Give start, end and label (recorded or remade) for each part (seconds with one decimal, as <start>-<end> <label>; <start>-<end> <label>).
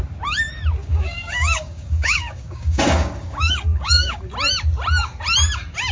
0.0-0.8 recorded; 0.8-4.3 remade; 4.3-5.9 recorded